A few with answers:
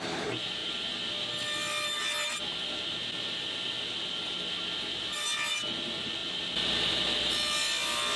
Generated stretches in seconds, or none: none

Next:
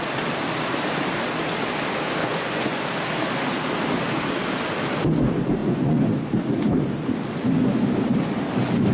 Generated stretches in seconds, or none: 2.2-2.8 (vocoder, Vocos); 5.6-6.1